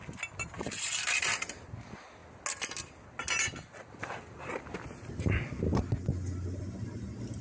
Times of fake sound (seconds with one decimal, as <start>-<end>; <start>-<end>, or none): none

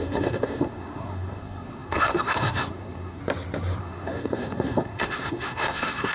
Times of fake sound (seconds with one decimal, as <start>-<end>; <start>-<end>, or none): 0.0-3.2; 3.8-6.1

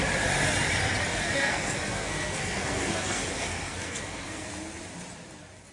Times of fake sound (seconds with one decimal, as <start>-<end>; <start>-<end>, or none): 1.1-4.5

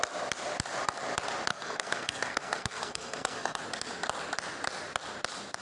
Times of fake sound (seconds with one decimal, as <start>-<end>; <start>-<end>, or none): 1.5-3.6

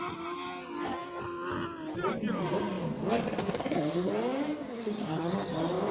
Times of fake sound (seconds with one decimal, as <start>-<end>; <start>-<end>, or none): 3.4-4.1; 4.7-5.3

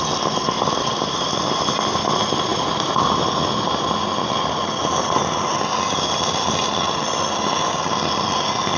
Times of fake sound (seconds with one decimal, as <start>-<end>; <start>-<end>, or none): none